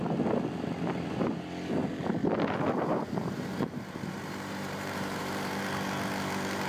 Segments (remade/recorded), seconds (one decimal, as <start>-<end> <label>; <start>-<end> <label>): 0.0-2.9 recorded; 2.9-5.6 remade; 5.6-6.7 recorded